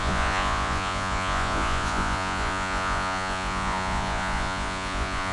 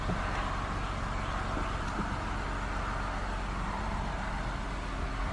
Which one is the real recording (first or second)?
second